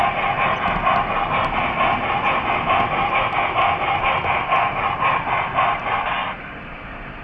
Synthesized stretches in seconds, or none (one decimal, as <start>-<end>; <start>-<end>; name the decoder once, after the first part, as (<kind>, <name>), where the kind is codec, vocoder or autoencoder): none